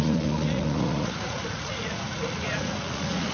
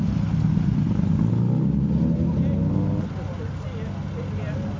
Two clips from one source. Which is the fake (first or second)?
first